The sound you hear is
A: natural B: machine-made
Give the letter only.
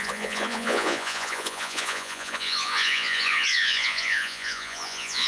B